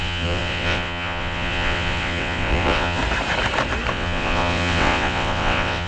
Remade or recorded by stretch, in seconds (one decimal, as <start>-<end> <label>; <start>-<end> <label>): 0.0-3.0 remade; 3.0-3.9 recorded; 3.9-5.9 remade